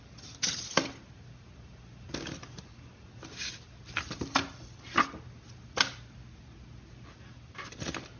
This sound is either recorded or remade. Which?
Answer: recorded